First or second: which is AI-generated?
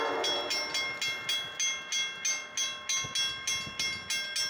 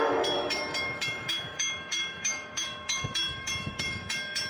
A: second